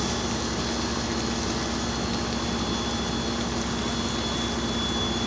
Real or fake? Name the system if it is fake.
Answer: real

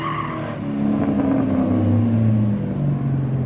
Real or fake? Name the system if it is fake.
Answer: real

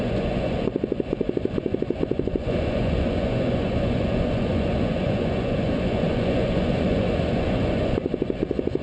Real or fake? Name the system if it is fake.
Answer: fake, vocoder, Vocos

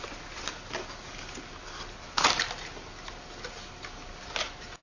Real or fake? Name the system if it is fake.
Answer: real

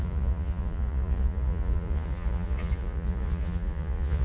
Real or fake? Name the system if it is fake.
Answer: fake, vocoder, Vocos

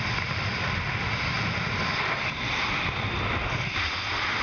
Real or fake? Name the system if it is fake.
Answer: real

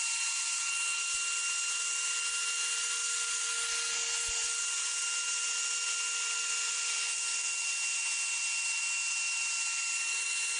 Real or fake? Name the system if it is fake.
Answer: real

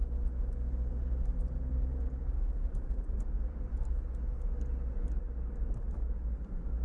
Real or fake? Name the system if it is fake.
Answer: real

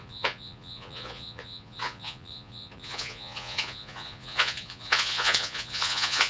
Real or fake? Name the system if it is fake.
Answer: fake, vocoder, Vocos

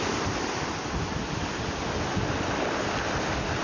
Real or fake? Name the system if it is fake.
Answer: real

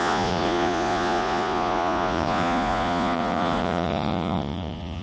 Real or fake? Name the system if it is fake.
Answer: fake, vocoder, Vocos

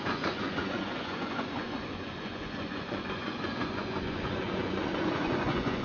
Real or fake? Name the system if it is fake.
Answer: fake, vocoder, Vocos